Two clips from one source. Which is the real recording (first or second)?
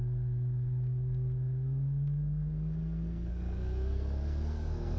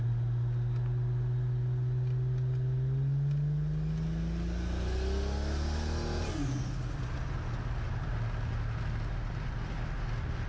second